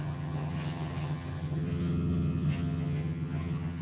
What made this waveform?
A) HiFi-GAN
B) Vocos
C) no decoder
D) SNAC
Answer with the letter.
A